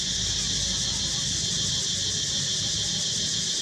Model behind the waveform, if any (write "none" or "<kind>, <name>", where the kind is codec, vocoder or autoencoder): none